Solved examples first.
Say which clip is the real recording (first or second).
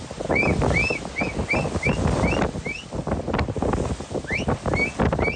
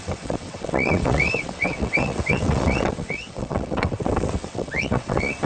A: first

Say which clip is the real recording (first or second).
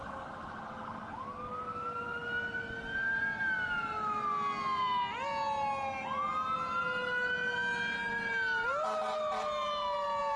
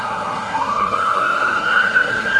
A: first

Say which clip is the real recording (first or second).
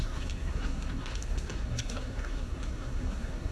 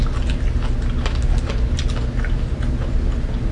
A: second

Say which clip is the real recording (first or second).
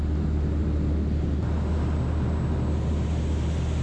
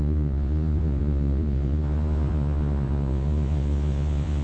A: first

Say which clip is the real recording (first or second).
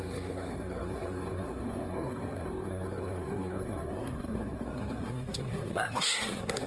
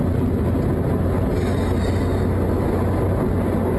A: second